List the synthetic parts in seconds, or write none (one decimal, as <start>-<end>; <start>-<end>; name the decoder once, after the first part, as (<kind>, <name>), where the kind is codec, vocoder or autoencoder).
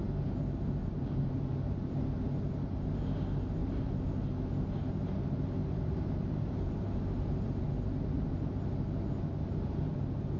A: 0.8-1.5 (vocoder, BigVGAN v2); 3.6-4.1; 5.6-8.5